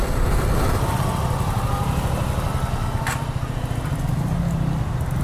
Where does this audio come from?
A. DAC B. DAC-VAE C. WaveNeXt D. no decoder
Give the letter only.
D